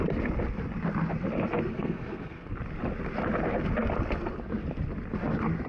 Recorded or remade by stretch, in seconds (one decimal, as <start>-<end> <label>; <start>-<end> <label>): 0.0-1.7 recorded; 1.7-2.5 remade; 2.5-5.7 recorded